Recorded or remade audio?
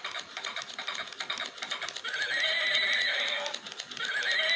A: recorded